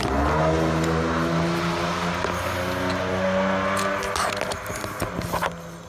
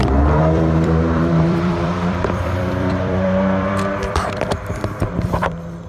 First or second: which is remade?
second